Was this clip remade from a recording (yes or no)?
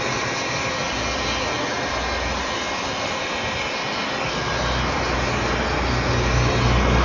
no